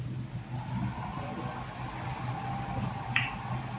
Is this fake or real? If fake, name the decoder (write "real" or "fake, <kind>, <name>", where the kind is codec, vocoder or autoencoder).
real